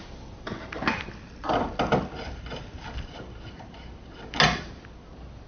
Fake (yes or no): no